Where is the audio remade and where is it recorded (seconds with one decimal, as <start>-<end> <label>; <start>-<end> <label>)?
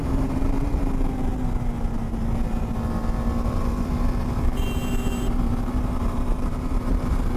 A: 0.0-1.3 remade; 1.3-3.5 recorded; 3.5-7.4 remade